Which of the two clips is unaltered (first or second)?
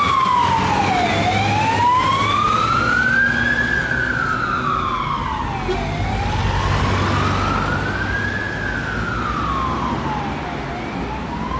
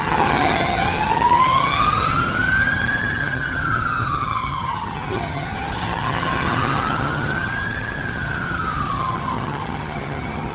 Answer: first